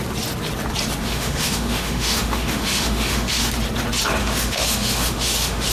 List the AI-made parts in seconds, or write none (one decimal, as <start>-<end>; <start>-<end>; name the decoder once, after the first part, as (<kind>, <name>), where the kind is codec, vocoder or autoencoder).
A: 1.0-3.5 (autoencoder, DAC-VAE); 4.2-5.7